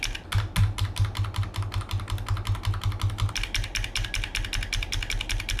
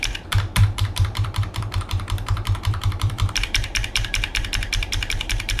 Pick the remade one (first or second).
second